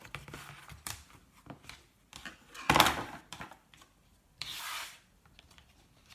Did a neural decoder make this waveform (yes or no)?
yes